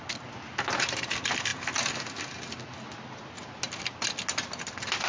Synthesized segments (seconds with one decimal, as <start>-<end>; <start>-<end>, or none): none

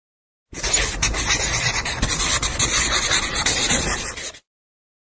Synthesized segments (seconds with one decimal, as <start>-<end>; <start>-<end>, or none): 2.6-3.2

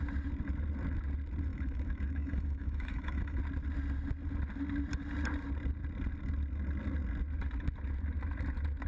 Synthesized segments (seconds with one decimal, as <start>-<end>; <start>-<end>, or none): 1.5-3.4

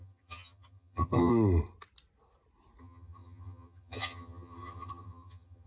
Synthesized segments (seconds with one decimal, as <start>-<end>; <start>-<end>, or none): 0.0-1.3; 2.8-5.7

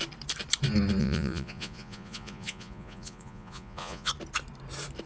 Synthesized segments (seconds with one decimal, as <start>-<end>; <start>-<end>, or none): 1.0-4.1

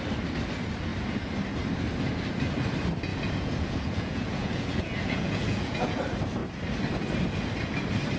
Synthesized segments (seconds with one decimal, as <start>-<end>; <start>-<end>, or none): 3.1-6.0

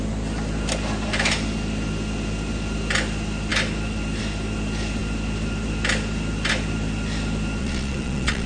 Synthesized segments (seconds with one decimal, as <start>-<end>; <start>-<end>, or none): 7.6-8.5